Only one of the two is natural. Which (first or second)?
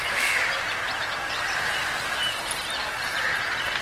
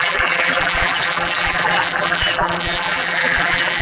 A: first